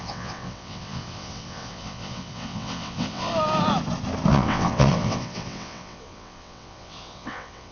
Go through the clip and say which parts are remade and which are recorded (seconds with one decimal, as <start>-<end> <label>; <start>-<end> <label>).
0.0-3.3 remade; 3.3-4.3 recorded; 4.3-7.7 remade